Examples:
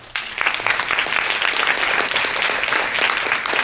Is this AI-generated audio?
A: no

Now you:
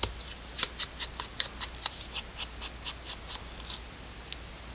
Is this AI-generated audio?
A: no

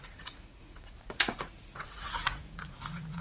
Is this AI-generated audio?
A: yes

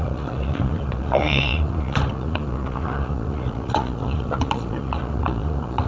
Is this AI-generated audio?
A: yes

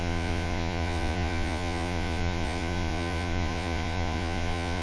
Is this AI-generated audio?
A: yes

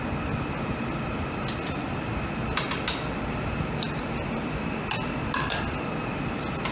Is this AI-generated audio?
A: no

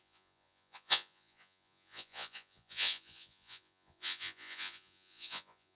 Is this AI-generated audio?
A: yes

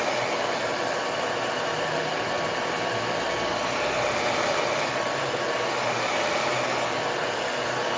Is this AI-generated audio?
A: no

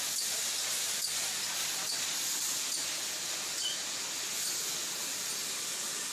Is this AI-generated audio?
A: no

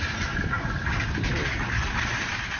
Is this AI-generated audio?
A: no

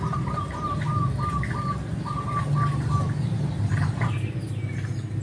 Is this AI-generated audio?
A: no